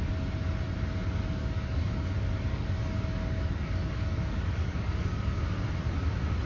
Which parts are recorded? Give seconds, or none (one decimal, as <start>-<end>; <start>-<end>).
0.0-1.4; 2.1-2.5; 5.4-6.5